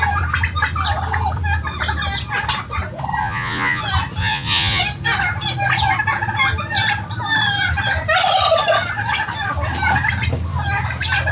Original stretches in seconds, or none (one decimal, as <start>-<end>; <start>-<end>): 0.0-3.2; 3.8-4.2; 4.8-11.3